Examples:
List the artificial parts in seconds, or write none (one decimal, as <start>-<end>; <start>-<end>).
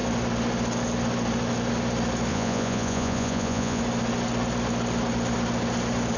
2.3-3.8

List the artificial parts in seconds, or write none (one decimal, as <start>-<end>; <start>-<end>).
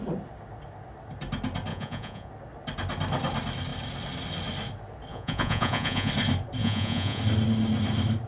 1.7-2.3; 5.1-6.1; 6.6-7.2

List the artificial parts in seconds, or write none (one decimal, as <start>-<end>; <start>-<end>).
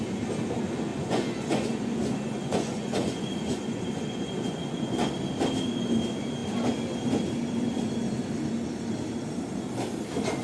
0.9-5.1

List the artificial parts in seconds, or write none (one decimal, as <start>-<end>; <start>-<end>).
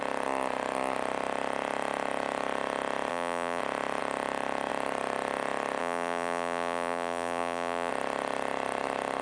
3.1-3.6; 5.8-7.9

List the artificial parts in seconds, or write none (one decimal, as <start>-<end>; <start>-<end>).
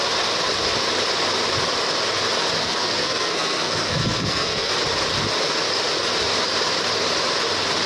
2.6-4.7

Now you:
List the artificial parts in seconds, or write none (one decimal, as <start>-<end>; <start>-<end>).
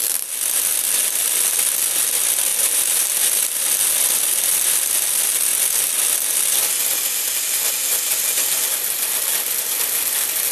2.5-3.1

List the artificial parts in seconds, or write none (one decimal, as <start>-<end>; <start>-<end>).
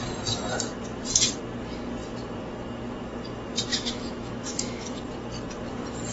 3.7-5.0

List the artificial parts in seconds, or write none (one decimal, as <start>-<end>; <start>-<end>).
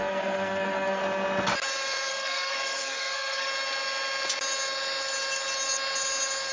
0.0-1.0; 2.1-3.5